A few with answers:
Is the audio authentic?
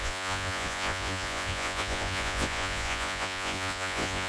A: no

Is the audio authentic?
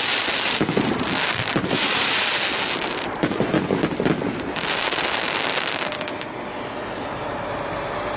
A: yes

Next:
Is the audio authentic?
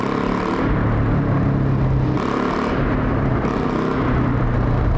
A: yes